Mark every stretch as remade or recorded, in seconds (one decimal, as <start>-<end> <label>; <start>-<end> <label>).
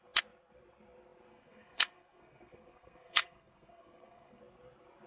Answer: 0.0-1.3 recorded; 1.3-4.4 remade; 4.4-5.1 recorded